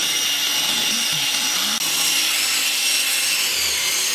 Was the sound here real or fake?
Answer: real